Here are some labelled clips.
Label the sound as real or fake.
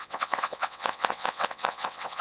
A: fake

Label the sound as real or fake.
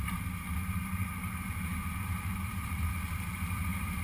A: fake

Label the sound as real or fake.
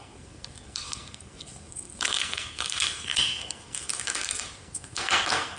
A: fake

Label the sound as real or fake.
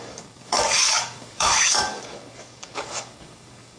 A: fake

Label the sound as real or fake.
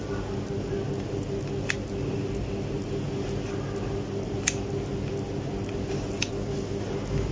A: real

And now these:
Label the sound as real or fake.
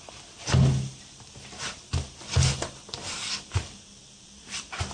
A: fake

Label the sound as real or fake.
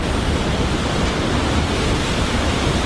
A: real